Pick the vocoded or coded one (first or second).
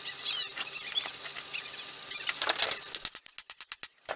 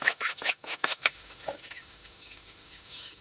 second